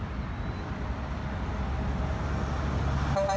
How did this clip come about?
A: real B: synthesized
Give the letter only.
A